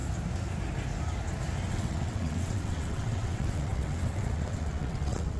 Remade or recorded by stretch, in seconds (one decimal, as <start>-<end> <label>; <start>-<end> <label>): 0.0-1.7 recorded; 1.7-5.4 remade